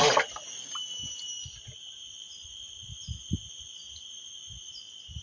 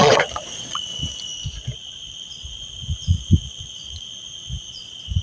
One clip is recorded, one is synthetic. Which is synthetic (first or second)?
second